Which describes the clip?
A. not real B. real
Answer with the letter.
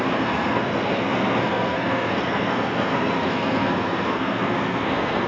A